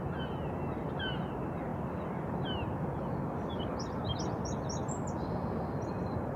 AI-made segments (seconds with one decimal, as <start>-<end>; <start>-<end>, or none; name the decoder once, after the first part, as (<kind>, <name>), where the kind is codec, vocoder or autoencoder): none